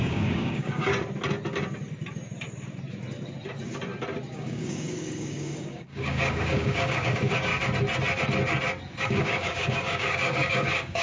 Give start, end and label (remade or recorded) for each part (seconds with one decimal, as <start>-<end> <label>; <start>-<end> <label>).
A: 0.0-0.9 remade; 0.9-4.3 recorded; 4.3-7.5 remade; 7.5-9.0 recorded; 9.0-11.0 remade